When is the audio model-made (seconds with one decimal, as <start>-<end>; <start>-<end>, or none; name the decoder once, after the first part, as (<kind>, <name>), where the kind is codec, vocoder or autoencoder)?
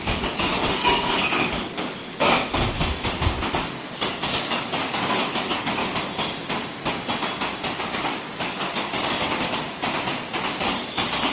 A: 0.0-2.0 (codec, DAC); 3.5-5.8; 7.8-9.6; 10.6-11.3